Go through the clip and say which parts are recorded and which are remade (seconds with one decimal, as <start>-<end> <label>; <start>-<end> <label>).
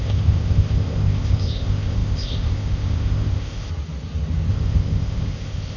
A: 0.0-3.7 remade; 3.7-4.5 recorded; 4.5-5.8 remade